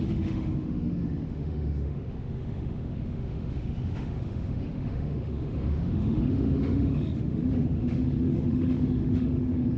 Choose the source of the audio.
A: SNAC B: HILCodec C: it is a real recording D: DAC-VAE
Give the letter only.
D